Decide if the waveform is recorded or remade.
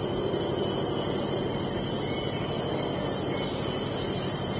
recorded